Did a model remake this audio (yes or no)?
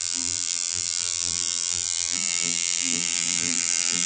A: yes